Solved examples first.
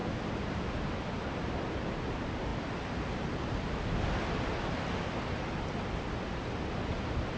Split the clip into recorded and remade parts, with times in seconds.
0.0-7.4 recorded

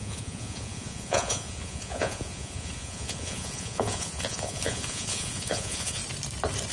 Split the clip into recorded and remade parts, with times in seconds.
0.0-6.0 remade; 6.0-6.7 recorded

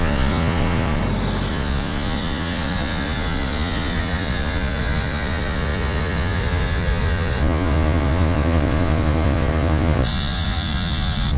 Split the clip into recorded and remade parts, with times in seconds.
0.0-1.0 remade; 1.0-1.5 recorded; 1.5-11.4 remade

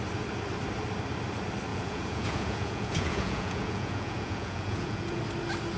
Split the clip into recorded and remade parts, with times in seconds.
0.0-1.7 recorded; 1.7-5.2 remade; 5.2-5.8 recorded

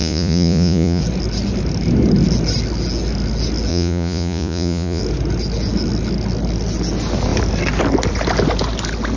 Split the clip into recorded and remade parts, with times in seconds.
0.0-1.0 remade; 1.0-3.7 recorded; 3.7-5.0 remade; 5.0-9.2 recorded

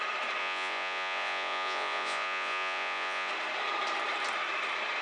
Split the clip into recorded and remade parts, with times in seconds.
0.0-0.4 recorded; 0.4-3.3 remade; 3.3-5.0 recorded

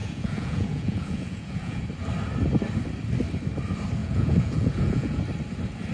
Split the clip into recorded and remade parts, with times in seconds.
0.0-1.8 remade; 1.8-4.0 recorded; 4.0-5.2 remade; 5.2-5.9 recorded

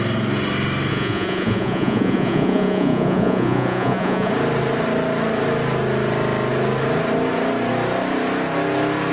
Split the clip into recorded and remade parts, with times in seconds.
0.0-0.9 recorded; 0.9-4.3 remade; 4.3-9.1 recorded